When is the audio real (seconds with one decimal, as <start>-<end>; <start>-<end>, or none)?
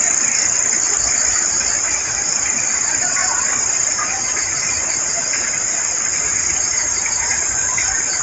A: 3.2-3.9